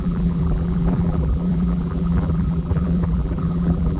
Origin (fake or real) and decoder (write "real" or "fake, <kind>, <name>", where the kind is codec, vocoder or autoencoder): fake, vocoder, BigVGAN v2